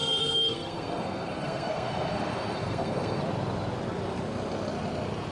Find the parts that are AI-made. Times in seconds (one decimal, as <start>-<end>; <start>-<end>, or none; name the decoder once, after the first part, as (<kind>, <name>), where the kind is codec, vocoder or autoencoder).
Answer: 0.0-3.2 (codec, SNAC)